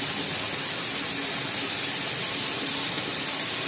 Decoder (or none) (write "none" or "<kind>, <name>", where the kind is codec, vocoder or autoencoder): none